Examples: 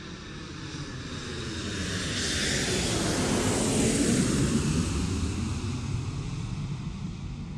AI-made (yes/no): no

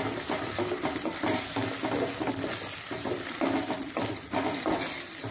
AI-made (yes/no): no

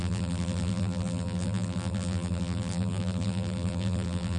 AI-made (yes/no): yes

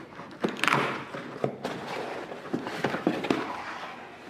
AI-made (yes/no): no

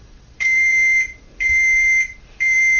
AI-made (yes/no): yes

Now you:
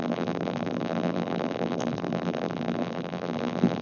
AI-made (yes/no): yes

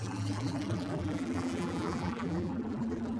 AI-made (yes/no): yes